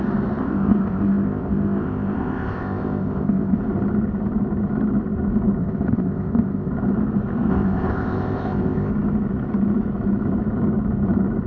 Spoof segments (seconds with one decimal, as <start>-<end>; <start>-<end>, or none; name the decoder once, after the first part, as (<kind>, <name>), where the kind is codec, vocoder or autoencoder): 0.4-3.6 (codec, ZipCodec); 5.6-6.7; 7.5-8.9